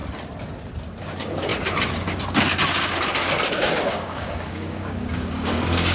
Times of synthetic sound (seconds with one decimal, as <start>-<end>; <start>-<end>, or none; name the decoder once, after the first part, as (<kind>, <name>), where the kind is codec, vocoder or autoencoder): 1.0-1.5 (codec, DAC); 3.5-5.9